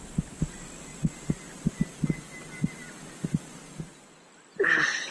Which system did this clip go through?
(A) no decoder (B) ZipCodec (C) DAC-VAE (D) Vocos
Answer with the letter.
A